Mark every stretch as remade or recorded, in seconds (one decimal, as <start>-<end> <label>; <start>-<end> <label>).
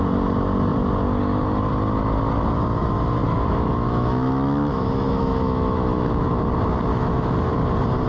0.0-3.2 recorded; 3.2-6.4 remade; 6.4-6.9 recorded; 6.9-7.5 remade; 7.5-8.1 recorded